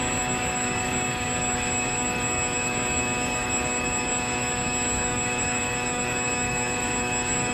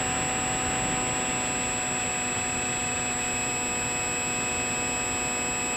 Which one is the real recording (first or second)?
second